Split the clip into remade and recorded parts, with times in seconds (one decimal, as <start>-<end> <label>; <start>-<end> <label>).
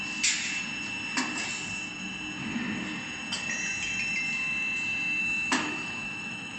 0.0-5.2 recorded; 5.2-6.6 remade